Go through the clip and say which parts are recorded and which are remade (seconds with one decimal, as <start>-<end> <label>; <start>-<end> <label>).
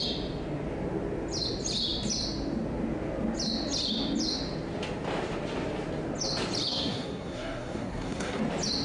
0.0-6.7 recorded; 6.7-8.4 remade; 8.4-8.8 recorded